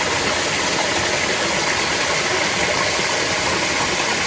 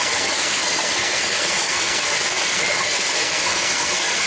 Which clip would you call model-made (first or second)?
second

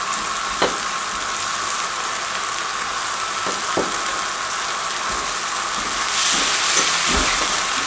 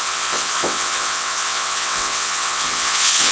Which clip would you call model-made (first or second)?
second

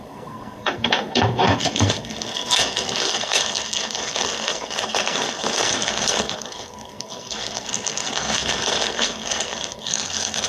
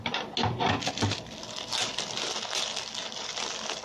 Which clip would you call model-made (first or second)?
first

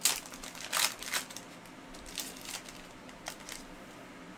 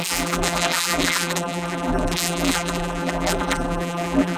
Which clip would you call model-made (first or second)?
second